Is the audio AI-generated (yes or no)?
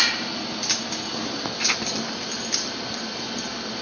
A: no